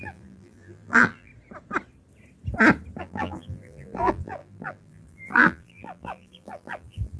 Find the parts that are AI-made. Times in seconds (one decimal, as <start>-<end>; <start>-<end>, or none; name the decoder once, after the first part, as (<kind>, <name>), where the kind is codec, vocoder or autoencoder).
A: 0.0-1.3 (vocoder, BigVGAN v2); 3.0-7.2